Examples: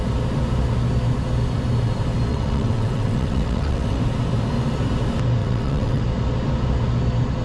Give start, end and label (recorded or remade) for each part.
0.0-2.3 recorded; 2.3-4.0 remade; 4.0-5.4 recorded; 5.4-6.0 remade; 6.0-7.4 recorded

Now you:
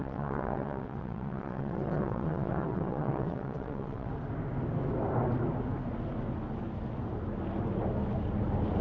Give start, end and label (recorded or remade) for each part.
0.0-4.1 remade; 4.1-8.8 recorded

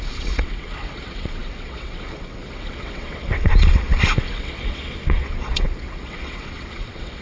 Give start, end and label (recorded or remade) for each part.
0.0-7.2 remade

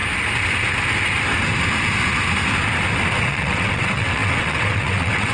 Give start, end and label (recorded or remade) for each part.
0.0-3.2 recorded; 3.2-5.3 remade

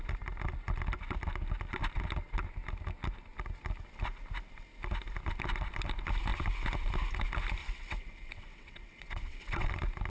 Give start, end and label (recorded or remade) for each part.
0.0-7.6 recorded; 7.6-9.7 remade; 9.7-10.1 recorded

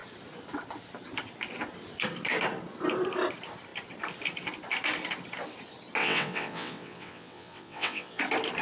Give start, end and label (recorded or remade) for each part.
0.0-6.0 recorded; 6.0-8.2 remade; 8.2-8.6 recorded

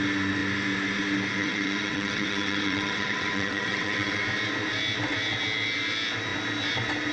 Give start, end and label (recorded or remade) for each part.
0.0-1.4 recorded; 1.4-4.2 remade; 4.2-7.1 recorded